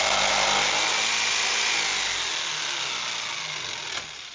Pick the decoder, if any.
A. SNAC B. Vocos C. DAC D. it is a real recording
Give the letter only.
D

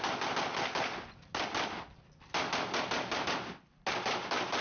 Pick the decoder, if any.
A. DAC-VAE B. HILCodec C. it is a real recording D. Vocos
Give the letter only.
C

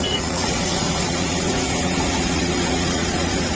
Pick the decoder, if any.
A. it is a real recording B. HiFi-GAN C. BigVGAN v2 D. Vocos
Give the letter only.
D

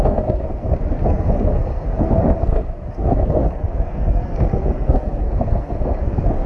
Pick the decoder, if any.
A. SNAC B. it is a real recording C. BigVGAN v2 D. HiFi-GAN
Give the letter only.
A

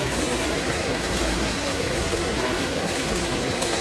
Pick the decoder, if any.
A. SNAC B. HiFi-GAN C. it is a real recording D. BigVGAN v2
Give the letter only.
A